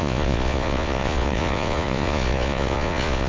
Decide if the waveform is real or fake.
fake